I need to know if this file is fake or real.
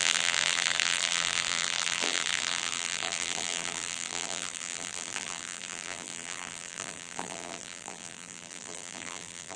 fake